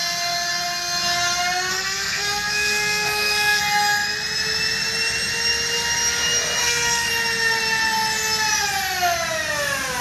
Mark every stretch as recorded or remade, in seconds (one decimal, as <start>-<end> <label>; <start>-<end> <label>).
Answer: 0.0-1.7 recorded; 1.7-3.6 remade; 3.6-6.6 recorded; 6.6-7.1 remade; 7.1-10.0 recorded